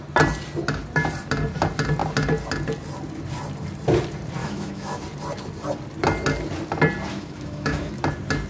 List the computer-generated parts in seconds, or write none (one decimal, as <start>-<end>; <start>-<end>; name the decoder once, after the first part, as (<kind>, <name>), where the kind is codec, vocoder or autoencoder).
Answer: 4.4-5.0 (autoencoder, DAC-VAE); 7.1-8.0